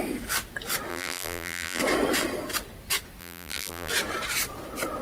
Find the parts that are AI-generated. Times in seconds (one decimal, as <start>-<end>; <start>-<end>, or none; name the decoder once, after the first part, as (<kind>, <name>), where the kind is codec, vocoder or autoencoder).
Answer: 0.9-1.8 (vocoder, BigVGAN v2); 3.2-3.9